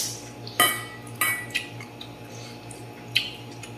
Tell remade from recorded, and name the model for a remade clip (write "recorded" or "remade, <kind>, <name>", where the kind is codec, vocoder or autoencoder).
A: recorded